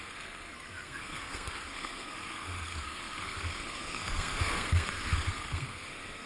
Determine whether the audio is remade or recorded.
remade